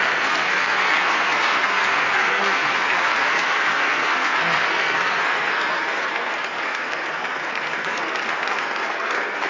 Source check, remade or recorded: remade